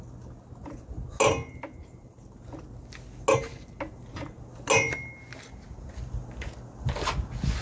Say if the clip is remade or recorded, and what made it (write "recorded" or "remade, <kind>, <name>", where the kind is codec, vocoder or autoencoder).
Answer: recorded